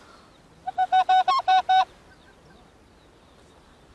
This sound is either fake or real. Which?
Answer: real